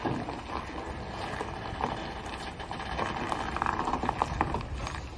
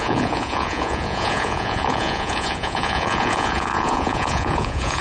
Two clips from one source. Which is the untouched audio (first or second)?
first